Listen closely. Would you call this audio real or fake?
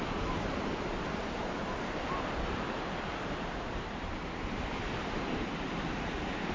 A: fake